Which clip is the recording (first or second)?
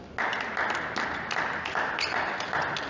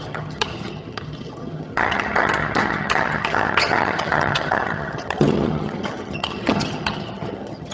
first